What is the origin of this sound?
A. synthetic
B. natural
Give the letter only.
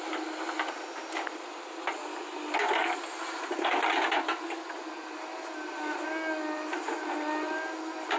B